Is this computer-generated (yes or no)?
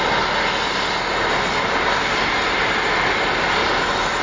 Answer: no